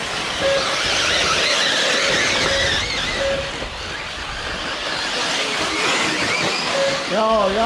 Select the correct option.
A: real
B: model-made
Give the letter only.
A